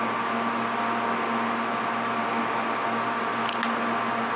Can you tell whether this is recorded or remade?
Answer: recorded